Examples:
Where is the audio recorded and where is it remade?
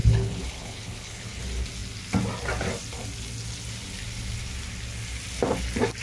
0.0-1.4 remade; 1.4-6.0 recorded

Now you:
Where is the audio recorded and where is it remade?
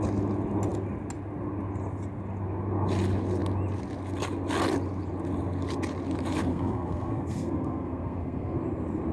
0.0-6.5 recorded; 6.5-8.6 remade; 8.6-9.1 recorded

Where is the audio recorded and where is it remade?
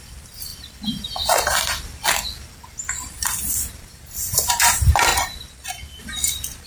0.0-6.7 remade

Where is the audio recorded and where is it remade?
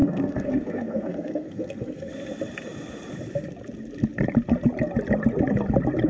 0.0-2.1 remade; 2.1-6.1 recorded